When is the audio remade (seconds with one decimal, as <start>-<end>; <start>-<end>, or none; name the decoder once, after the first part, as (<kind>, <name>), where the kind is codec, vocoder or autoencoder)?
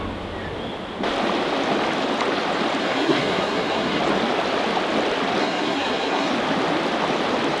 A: 2.8-4.0 (codec, SNAC); 5.4-6.3